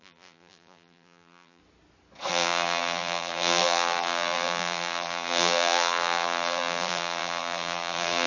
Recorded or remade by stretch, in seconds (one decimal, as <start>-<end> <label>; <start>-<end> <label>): 0.0-1.6 remade; 1.6-2.3 recorded; 2.3-8.3 remade